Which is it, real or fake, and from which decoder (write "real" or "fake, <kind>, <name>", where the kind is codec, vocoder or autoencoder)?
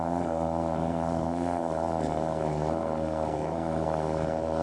fake, codec, SNAC